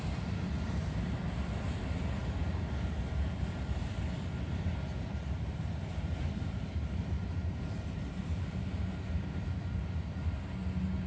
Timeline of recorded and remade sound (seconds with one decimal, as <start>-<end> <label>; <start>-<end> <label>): 0.0-5.2 recorded; 5.2-10.3 remade; 10.3-11.1 recorded